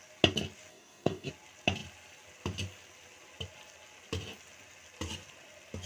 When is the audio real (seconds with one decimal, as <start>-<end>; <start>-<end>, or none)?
0.0-0.7; 1.3-5.9